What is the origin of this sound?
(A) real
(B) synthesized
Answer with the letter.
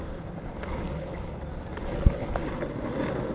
A